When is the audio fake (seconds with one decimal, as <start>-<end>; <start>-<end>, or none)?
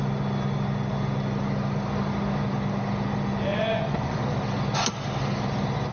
3.5-4.2